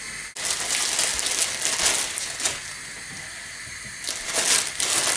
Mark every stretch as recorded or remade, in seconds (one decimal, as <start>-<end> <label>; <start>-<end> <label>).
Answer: 0.0-5.2 recorded